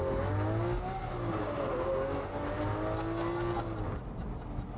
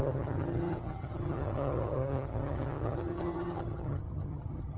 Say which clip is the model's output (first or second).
second